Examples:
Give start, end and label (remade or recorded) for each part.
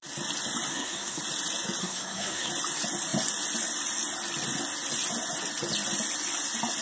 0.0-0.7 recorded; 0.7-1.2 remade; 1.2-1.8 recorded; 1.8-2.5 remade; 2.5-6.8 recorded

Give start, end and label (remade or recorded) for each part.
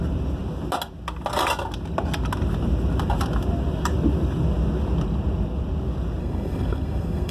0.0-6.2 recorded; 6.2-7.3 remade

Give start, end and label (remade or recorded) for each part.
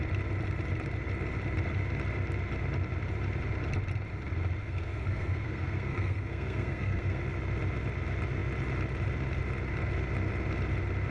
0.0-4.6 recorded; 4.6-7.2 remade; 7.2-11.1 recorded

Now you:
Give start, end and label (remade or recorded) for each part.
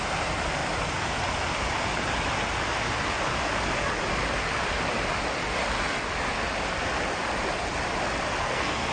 0.0-8.4 recorded; 8.4-8.9 remade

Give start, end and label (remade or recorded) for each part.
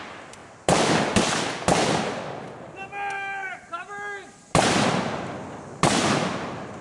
0.0-6.8 recorded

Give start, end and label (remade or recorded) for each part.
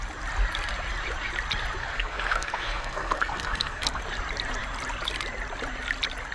0.0-1.8 recorded; 1.8-4.0 remade; 4.0-6.3 recorded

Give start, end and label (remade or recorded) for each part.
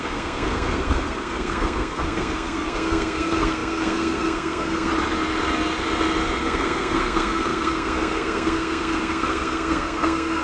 0.0-4.9 remade; 4.9-6.4 recorded; 6.4-10.4 remade